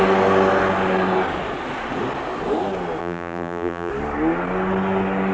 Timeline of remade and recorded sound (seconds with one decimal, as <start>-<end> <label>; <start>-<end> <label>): 0.0-3.0 recorded; 3.0-3.9 remade; 3.9-5.3 recorded